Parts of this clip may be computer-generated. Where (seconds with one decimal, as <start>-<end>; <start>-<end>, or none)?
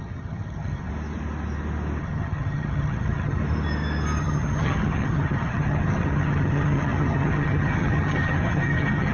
0.0-0.9; 2.0-3.4; 4.2-9.1